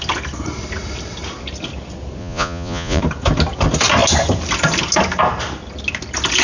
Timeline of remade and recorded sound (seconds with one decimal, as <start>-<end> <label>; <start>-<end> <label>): 0.0-2.2 recorded; 2.2-3.0 remade; 3.0-6.4 recorded